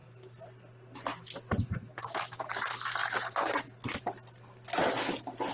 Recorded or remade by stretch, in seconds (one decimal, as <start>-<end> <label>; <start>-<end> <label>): 0.0-5.5 recorded